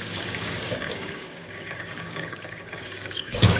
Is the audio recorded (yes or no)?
no